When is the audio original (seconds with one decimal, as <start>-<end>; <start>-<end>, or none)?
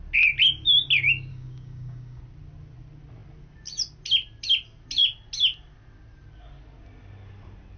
0.0-1.3; 2.2-7.8